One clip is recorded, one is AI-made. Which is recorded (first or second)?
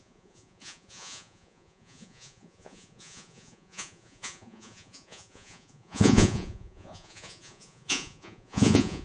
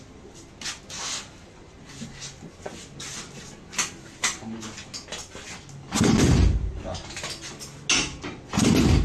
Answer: second